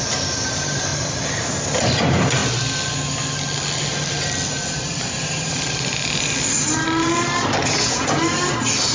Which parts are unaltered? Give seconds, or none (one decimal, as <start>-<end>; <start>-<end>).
0.0-7.6; 8.2-8.9